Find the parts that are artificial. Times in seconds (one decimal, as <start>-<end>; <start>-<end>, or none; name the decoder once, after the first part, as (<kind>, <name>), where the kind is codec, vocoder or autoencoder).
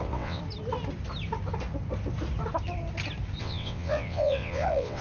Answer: 0.0-0.4 (vocoder, WaveNeXt); 3.4-5.0